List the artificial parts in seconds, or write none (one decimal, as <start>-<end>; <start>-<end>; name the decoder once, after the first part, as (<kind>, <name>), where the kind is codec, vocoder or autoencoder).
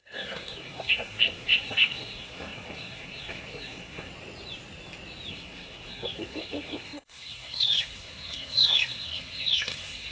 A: 0.0-4.1 (codec, SNAC); 5.3-10.1